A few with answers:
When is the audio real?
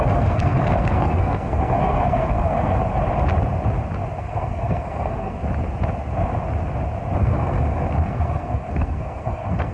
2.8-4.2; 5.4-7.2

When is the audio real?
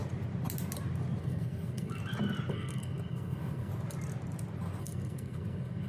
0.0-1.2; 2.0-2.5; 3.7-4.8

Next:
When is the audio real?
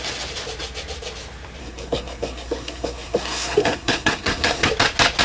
0.0-1.6; 4.7-5.2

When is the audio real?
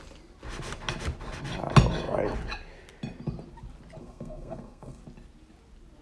0.0-4.0; 5.0-6.0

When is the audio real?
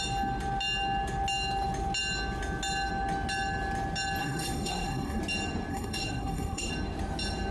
0.0-4.2; 5.2-5.7; 6.7-7.5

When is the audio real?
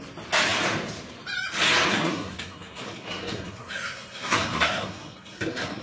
0.0-1.9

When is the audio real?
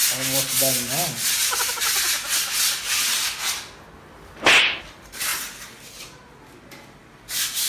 0.0-7.7